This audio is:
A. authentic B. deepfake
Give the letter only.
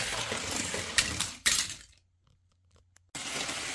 A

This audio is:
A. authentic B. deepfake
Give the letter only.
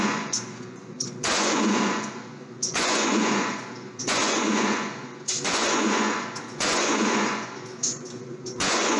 B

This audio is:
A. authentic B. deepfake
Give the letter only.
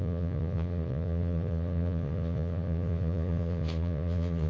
B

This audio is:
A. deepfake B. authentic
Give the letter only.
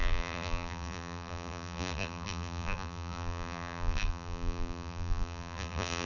A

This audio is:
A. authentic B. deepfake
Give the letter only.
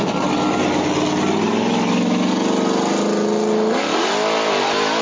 A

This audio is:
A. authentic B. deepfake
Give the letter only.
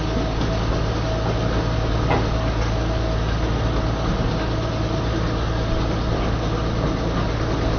A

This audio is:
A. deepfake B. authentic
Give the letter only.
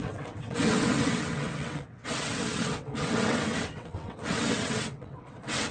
A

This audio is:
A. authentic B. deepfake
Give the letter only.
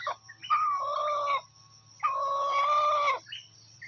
A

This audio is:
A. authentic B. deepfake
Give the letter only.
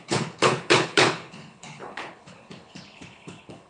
B